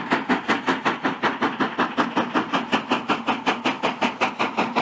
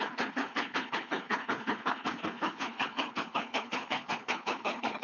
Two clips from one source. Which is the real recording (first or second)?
first